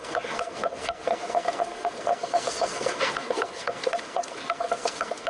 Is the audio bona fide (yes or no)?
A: no